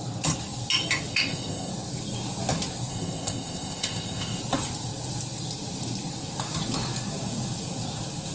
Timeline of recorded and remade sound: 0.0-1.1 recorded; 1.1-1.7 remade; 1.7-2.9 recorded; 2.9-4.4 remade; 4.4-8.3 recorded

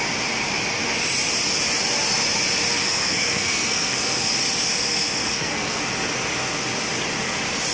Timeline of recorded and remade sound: 0.0-2.8 recorded; 2.8-4.3 remade; 4.3-4.7 recorded; 4.7-5.8 remade; 5.8-7.7 recorded

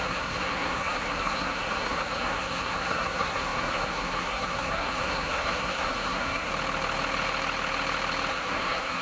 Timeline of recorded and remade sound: 0.0-6.5 remade; 6.5-8.3 recorded; 8.3-9.0 remade

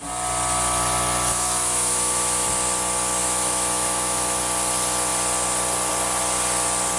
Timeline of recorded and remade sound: 0.0-1.3 recorded; 1.3-2.5 remade; 2.5-3.2 recorded; 3.2-4.4 remade; 4.4-7.0 recorded

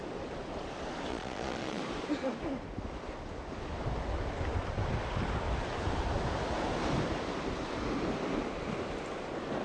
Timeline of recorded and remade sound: 0.0-1.1 recorded; 1.1-1.8 remade; 1.8-9.6 recorded

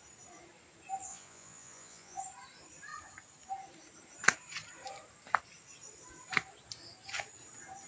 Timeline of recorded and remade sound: 0.0-1.1 recorded; 1.1-2.2 remade; 2.2-7.9 recorded

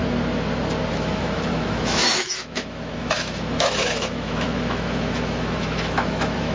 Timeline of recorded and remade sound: 0.0-0.9 recorded; 0.9-6.5 remade

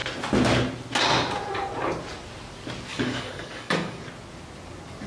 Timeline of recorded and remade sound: 0.0-2.9 recorded; 2.9-4.0 remade; 4.0-5.1 recorded